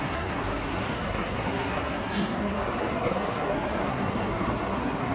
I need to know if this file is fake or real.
fake